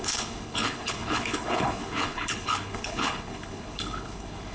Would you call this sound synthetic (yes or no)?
yes